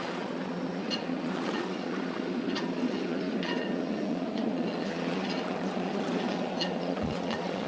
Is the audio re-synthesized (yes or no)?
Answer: yes